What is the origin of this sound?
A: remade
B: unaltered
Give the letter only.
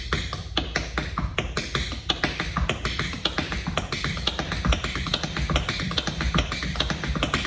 B